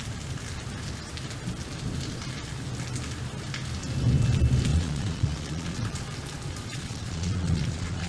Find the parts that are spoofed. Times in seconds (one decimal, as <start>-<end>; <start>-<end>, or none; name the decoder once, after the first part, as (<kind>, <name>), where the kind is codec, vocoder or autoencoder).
4.7-6.0 (vocoder, Vocos); 6.7-8.1